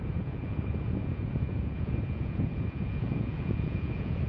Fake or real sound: fake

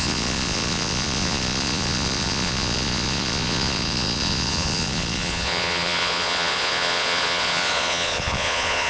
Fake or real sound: fake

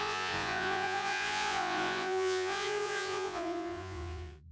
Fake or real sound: fake